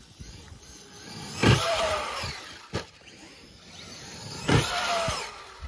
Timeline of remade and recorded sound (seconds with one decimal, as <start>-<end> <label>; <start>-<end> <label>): 0.0-1.4 recorded; 1.4-2.9 remade; 2.9-5.7 recorded